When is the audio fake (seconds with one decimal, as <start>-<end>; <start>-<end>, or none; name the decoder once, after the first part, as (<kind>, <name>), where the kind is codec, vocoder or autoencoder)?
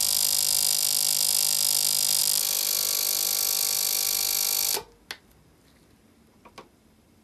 none